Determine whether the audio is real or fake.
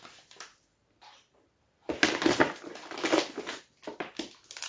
real